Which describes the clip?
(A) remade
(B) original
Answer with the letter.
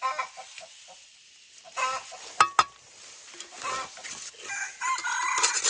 B